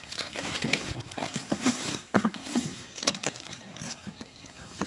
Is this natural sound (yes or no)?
no